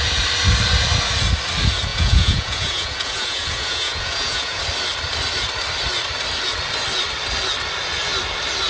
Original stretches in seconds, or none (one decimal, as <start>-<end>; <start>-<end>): 0.0-1.9; 4.6-8.7